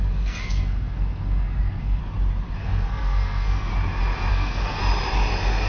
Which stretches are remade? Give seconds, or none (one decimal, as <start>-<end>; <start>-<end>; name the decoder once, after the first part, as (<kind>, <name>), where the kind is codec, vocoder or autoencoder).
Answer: 0.0-2.0 (codec, SNAC); 2.6-3.7; 4.3-4.8

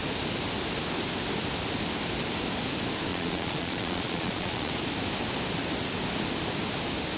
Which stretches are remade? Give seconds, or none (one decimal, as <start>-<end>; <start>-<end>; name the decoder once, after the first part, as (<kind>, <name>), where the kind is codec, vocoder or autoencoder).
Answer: 3.1-4.7 (vocoder, Vocos)

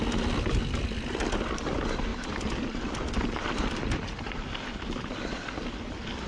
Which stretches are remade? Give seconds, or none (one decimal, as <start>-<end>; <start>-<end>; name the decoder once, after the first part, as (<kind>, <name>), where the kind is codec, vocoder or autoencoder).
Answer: 2.1-6.3 (vocoder, BigVGAN v2)

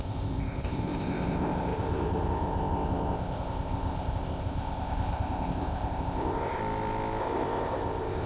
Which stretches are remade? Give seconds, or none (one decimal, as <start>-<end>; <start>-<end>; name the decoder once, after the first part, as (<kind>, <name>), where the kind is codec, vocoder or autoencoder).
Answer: 0.0-6.6 (codec, ZipCodec); 7.2-8.3

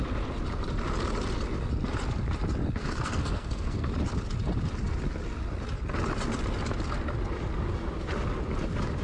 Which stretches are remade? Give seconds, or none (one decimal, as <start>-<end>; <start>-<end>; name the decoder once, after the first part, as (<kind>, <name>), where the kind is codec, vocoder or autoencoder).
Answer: 2.8-3.9 (codec, SNAC)

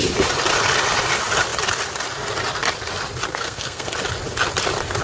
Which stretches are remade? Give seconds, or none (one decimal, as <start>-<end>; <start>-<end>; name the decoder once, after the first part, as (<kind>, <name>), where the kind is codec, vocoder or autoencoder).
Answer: 3.3-3.9 (codec, SNAC)

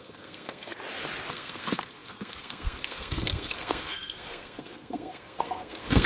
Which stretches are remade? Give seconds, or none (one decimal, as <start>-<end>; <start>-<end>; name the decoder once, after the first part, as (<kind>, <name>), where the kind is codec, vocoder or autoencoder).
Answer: 0.0-0.7 (codec, SNAC); 1.3-6.1